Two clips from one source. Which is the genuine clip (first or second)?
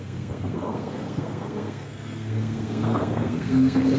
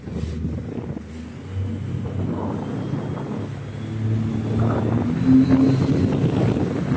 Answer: second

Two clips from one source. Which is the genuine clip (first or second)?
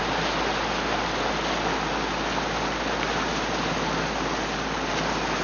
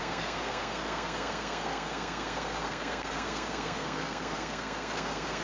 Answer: first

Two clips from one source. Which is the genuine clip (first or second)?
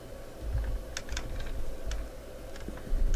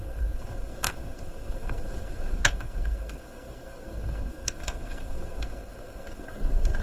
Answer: first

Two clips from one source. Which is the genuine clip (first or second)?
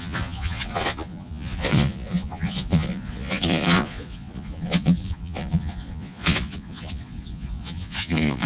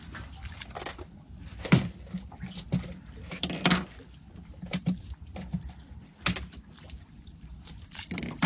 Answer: second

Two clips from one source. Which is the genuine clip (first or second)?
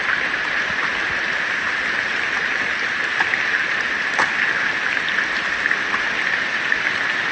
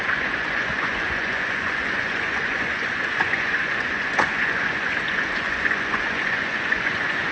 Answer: first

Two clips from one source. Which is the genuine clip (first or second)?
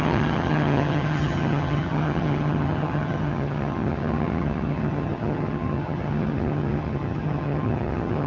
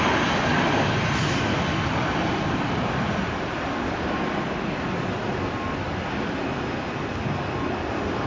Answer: second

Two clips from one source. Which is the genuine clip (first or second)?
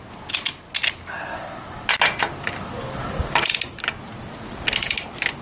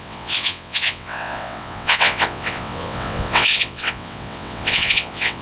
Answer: first